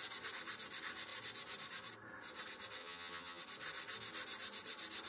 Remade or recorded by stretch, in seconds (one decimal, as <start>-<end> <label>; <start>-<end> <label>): 0.0-2.8 recorded; 2.8-3.4 remade; 3.4-5.1 recorded